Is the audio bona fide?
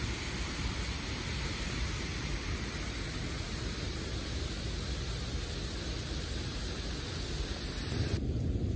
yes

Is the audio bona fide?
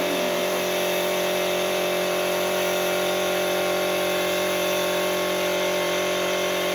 no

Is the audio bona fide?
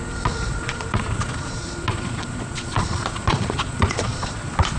no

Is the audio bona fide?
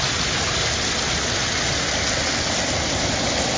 yes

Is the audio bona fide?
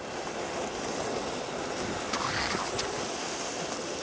yes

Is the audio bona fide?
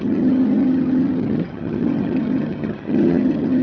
no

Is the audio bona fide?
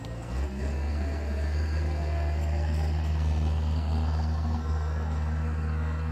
no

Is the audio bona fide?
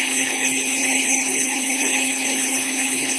no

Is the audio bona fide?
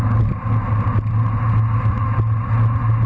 yes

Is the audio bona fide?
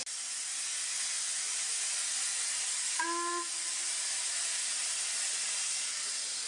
yes